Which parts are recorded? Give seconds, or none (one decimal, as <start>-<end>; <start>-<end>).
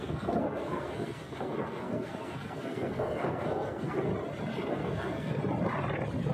4.1-4.7; 5.4-6.3